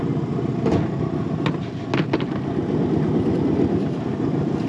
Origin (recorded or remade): recorded